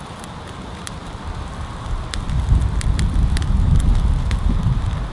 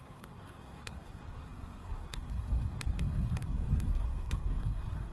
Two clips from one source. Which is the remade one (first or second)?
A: second